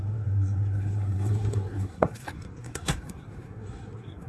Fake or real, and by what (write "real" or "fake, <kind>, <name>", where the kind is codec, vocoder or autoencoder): fake, codec, SNAC